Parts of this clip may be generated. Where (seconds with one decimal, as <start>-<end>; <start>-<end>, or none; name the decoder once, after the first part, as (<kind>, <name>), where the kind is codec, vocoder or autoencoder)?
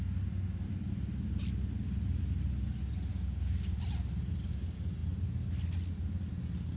3.1-3.8 (codec, DAC)